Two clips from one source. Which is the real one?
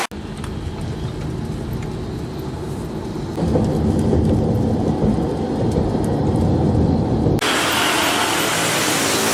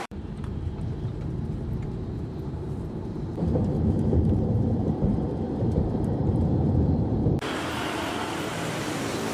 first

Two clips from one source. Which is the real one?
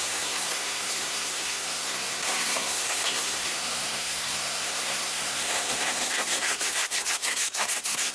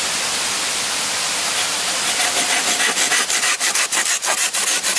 second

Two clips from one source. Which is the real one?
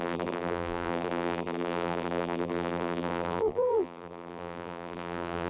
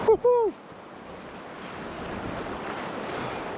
second